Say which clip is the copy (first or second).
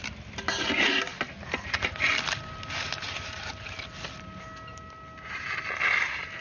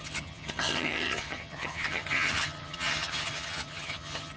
second